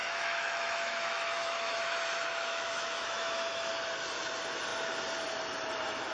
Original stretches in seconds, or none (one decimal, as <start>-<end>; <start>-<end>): 3.7-6.1